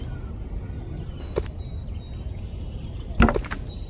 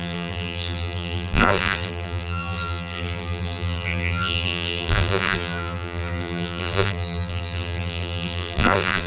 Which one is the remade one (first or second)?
second